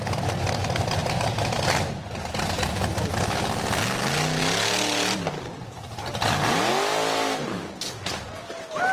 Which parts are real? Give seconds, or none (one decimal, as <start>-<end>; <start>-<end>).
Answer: 0.0-1.0; 3.8-8.9